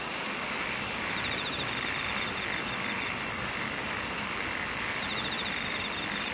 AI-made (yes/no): no